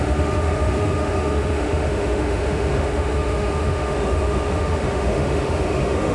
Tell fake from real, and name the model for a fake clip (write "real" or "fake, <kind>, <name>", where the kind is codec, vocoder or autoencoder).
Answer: fake, autoencoder, DAC-VAE